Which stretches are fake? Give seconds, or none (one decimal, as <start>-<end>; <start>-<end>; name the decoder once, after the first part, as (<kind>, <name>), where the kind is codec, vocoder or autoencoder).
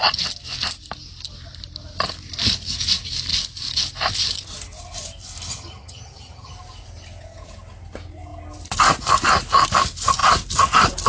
5.5-6.5 (vocoder, HiFi-GAN)